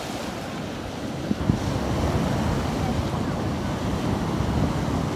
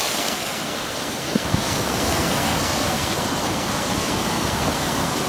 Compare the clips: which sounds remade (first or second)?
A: second